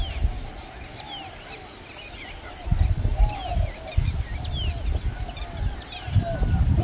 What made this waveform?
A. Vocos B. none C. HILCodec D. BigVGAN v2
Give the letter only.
B